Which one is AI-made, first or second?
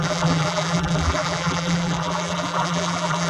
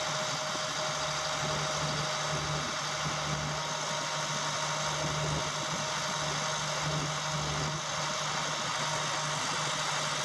first